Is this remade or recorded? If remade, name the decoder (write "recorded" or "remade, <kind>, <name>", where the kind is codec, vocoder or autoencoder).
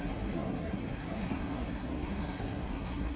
remade, codec, SNAC